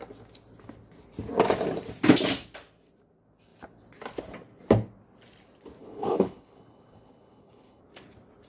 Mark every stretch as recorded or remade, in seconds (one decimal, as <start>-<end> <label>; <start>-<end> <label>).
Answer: 0.0-5.8 recorded; 5.8-7.8 remade; 7.8-8.5 recorded